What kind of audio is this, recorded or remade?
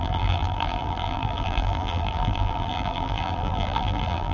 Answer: remade